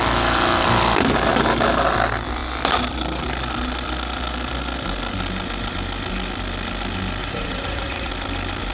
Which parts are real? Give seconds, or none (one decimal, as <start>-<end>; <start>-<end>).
0.0-7.2; 8.1-8.7